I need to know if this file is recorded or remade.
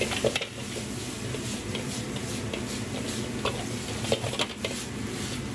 recorded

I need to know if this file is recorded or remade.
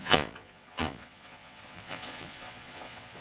remade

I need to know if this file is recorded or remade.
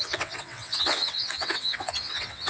remade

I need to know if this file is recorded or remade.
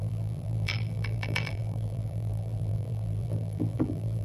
remade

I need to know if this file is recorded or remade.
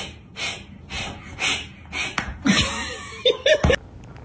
recorded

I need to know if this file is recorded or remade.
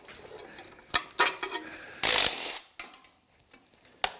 recorded